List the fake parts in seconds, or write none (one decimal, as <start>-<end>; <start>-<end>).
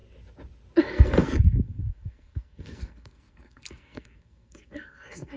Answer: 0.8-5.4